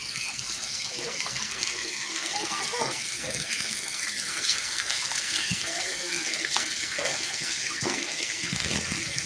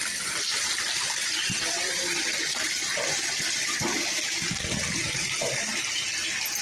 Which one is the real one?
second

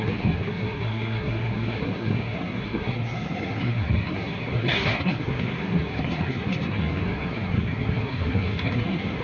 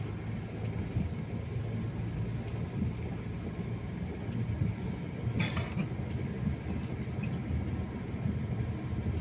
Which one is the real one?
second